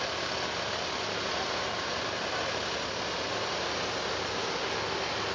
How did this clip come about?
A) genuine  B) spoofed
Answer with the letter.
A